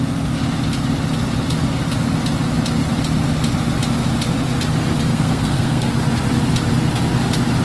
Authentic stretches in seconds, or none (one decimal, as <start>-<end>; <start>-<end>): 0.0-5.1; 5.9-7.6